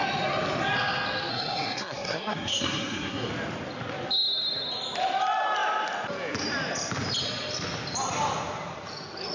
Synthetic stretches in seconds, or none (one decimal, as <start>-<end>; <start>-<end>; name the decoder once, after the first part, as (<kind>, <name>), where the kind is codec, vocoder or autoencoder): 1.3-3.3 (codec, SNAC)